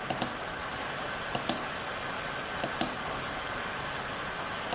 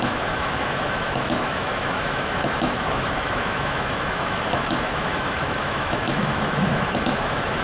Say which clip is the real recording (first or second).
first